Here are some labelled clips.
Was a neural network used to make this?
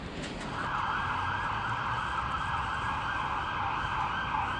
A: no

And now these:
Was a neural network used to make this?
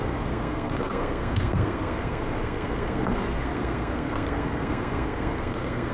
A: yes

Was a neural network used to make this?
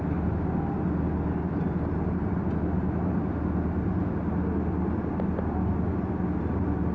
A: no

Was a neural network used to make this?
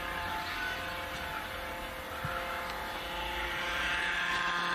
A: no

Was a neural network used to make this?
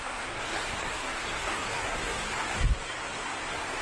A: yes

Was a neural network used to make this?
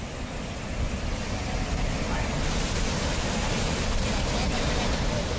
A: no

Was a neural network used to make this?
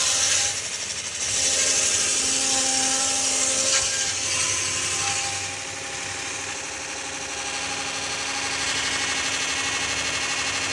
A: no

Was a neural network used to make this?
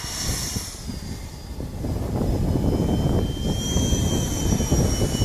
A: no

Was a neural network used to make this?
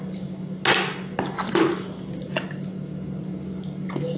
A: no